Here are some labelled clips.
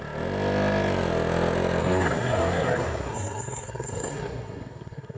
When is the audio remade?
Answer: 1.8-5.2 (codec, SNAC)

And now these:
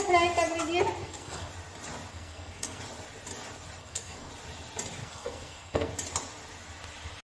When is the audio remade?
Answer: 1.0-1.5 (codec, SNAC); 2.1-2.8; 3.8-4.3; 5.0-5.9